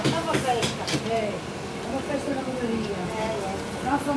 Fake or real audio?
real